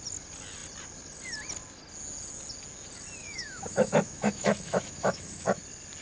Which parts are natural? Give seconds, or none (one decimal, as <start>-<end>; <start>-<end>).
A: 0.0-3.2; 5.6-6.0